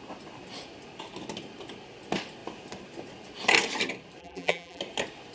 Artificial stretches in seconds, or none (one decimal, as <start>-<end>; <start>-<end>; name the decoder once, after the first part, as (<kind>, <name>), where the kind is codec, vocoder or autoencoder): 4.2-4.8 (vocoder, BigVGAN v2)